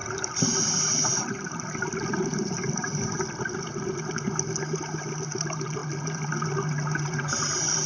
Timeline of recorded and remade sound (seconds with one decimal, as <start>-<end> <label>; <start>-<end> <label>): 0.0-7.9 recorded